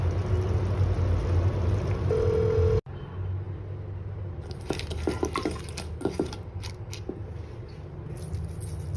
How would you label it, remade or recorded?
recorded